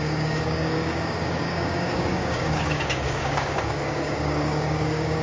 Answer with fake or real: fake